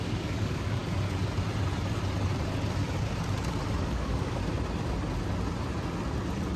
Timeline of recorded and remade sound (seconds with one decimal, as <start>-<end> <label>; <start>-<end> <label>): 0.0-0.8 remade; 0.8-3.8 recorded; 3.8-4.4 remade; 4.4-6.6 recorded